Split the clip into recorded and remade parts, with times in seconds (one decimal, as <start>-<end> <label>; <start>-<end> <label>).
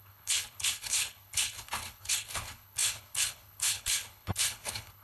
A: 0.0-5.0 remade